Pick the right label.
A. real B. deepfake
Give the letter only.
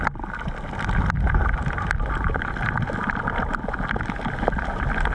A